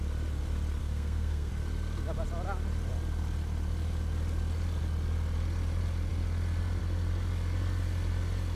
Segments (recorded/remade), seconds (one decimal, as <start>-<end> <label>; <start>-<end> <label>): 0.0-0.8 recorded; 0.8-1.5 remade; 1.5-8.6 recorded